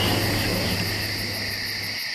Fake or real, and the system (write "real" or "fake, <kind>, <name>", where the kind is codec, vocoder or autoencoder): real